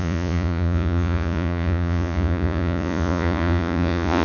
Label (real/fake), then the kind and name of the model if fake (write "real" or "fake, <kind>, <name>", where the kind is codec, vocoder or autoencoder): fake, vocoder, Vocos